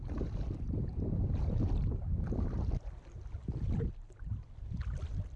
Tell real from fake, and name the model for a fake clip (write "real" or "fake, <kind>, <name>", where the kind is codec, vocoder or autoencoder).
real